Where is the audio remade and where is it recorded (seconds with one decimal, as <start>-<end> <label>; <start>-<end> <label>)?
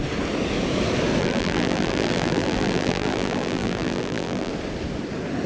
0.0-1.2 recorded; 1.2-4.5 remade; 4.5-5.5 recorded